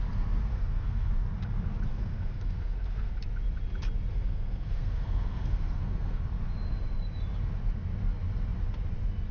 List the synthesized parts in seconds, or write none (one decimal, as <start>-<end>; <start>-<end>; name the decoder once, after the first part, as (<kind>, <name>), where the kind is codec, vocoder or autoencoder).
0.5-1.1 (codec, SNAC); 1.9-3.1; 4.1-6.2